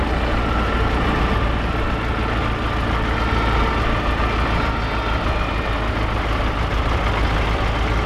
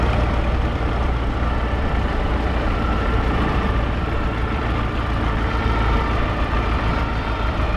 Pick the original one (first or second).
first